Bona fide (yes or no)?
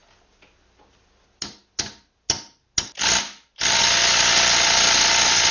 yes